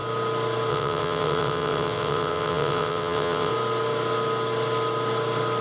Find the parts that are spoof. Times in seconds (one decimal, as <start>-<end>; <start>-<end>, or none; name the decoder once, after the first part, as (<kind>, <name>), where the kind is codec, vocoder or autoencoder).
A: 0.7-3.5 (vocoder, WaveNeXt)